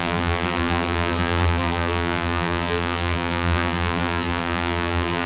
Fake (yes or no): yes